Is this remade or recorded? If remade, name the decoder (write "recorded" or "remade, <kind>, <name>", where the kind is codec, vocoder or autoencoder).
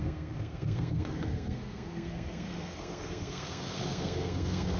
remade, codec, SNAC